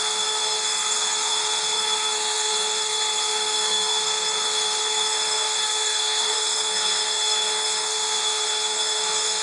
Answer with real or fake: fake